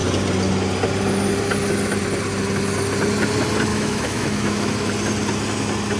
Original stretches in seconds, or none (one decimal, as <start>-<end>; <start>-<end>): 0.0-3.7; 4.9-6.0